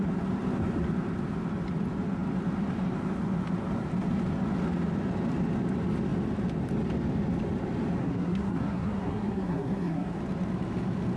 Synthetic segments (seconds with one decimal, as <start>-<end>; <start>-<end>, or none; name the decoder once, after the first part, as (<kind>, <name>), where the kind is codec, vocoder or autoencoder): 8.0-10.2 (codec, SNAC)